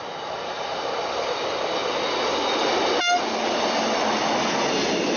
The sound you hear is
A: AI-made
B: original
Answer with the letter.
B